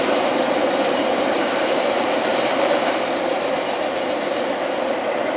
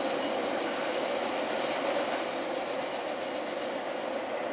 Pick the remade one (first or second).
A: first